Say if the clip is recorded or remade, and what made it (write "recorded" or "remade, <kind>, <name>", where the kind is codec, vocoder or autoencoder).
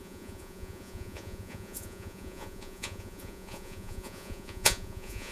remade, vocoder, Vocos